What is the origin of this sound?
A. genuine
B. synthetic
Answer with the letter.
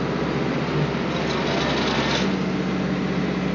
A